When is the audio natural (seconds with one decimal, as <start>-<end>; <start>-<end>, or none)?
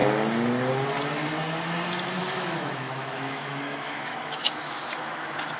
0.0-2.2